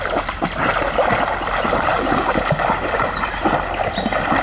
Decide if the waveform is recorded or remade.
recorded